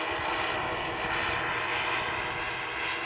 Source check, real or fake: fake